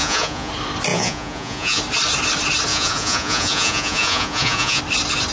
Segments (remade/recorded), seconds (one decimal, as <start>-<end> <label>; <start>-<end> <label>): 0.0-0.5 remade; 0.5-0.9 recorded; 0.9-1.8 remade; 1.8-2.7 recorded; 2.7-4.8 remade; 4.8-5.3 recorded